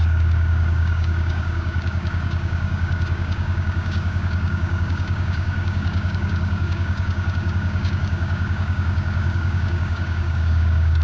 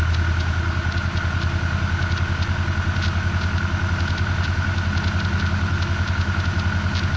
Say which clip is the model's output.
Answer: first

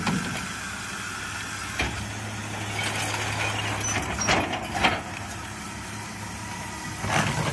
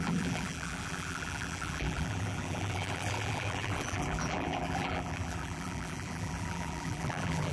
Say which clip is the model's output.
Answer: second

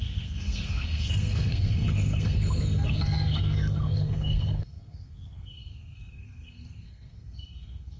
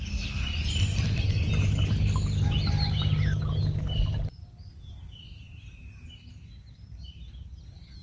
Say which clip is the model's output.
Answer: first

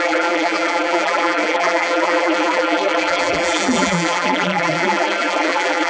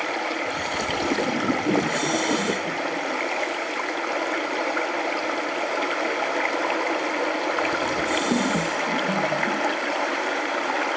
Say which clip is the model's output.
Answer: first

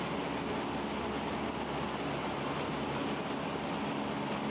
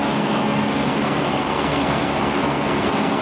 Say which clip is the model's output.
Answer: second